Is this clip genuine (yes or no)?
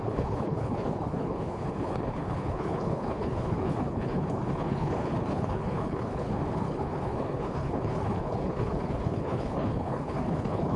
no